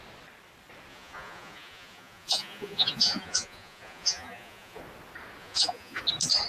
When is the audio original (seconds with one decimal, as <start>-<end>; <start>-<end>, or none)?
0.0-0.9; 4.8-5.4; 6.0-6.5